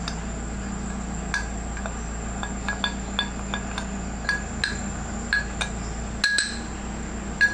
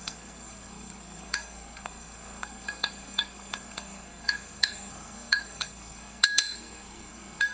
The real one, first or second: first